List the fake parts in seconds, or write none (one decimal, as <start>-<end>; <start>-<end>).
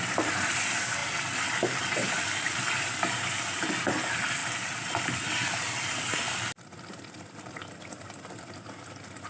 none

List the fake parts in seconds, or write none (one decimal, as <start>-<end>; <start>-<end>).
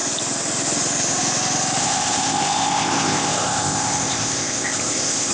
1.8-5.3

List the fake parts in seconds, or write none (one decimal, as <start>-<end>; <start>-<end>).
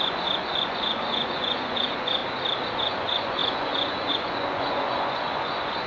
0.0-2.2; 2.7-5.9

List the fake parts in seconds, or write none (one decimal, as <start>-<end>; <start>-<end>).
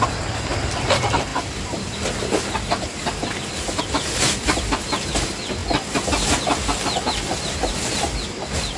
none